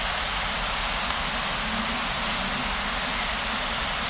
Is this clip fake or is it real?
real